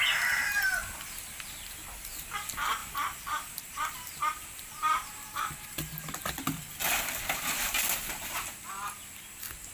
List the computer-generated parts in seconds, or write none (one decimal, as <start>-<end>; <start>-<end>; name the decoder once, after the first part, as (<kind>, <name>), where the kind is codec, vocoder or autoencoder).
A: 2.8-6.0 (vocoder, BigVGAN v2)